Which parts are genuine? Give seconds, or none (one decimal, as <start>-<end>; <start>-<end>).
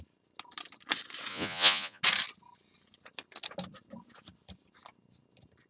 0.0-1.3; 2.0-5.7